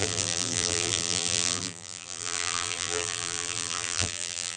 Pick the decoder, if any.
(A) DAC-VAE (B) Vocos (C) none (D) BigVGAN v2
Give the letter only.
D